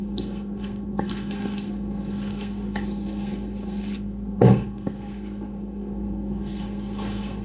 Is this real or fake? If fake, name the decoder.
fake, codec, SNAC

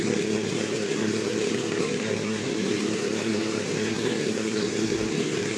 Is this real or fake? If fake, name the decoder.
fake, codec, SNAC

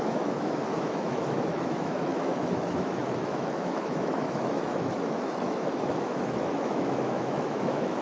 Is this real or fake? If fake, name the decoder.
fake, autoencoder, DAC-VAE